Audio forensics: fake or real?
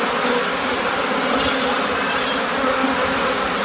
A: real